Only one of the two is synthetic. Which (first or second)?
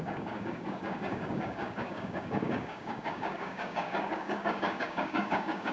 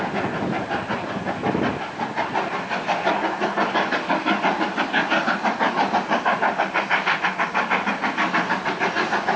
first